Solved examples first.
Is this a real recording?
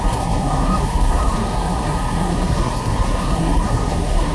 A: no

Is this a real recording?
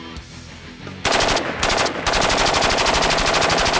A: yes